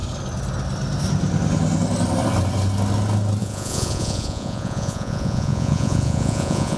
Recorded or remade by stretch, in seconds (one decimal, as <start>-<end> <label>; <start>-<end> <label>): 0.0-3.4 recorded; 3.4-6.8 remade